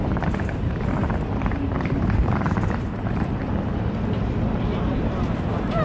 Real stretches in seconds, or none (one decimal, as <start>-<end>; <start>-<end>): 3.4-4.6